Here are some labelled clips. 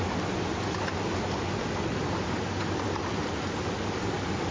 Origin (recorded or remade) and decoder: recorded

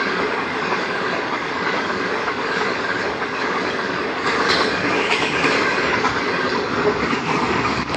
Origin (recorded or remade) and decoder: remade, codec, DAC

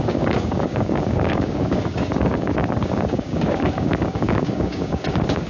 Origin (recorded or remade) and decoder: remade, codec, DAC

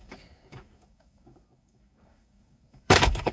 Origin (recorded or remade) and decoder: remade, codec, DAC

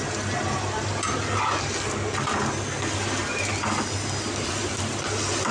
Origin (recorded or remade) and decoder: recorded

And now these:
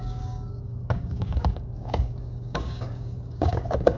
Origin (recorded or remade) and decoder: remade, codec, DAC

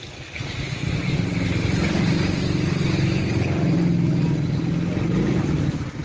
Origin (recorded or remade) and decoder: recorded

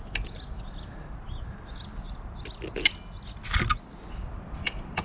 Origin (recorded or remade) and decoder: recorded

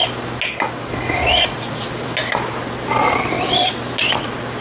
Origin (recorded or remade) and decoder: recorded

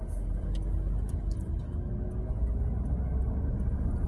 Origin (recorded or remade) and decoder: recorded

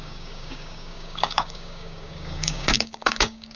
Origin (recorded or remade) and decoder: remade, codec, DAC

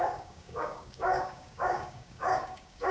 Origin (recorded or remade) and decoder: remade, codec, DAC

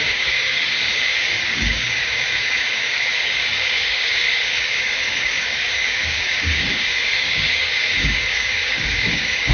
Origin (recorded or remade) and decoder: remade, codec, DAC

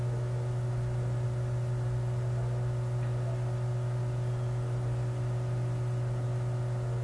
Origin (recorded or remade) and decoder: recorded